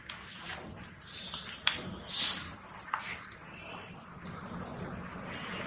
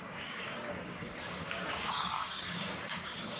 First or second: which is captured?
first